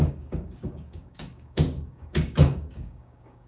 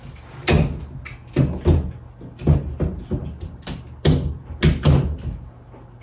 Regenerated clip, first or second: first